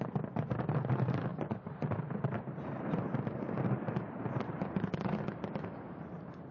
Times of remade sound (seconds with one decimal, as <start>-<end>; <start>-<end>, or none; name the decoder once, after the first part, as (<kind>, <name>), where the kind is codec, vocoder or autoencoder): 1.3-5.2 (vocoder, BigVGAN v2)